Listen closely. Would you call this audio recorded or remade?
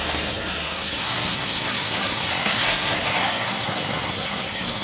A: remade